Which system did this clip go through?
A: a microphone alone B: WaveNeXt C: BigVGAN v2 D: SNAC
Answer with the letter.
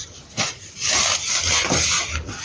A